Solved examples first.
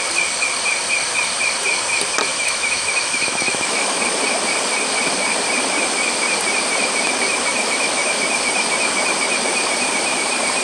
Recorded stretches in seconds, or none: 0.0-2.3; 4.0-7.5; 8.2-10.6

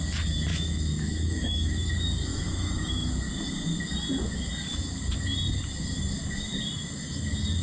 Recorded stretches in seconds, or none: 0.0-0.5; 1.9-2.3; 3.1-7.6